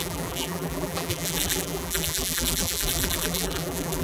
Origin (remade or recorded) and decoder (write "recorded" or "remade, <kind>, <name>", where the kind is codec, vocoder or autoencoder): remade, vocoder, BigVGAN v2